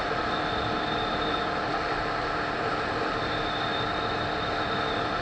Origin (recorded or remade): recorded